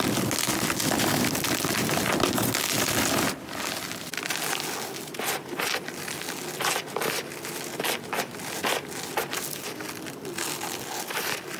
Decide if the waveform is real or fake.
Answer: real